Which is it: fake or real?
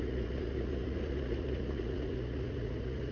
fake